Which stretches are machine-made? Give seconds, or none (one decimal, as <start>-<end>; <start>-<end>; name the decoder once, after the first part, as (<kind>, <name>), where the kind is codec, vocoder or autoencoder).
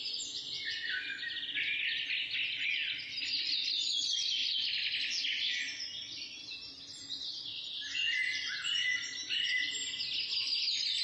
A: 0.0-0.6 (vocoder, Vocos)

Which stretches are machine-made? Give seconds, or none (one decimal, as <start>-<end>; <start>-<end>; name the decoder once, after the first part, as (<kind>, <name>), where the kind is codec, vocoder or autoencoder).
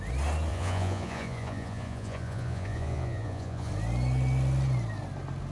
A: 0.5-3.7 (vocoder, Vocos)